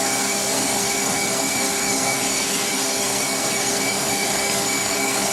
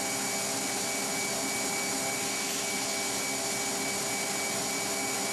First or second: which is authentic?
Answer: second